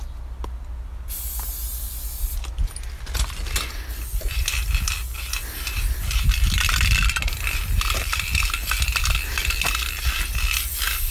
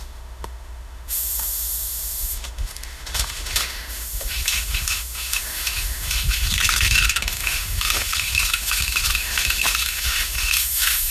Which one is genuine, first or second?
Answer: first